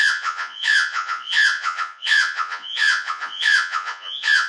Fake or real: fake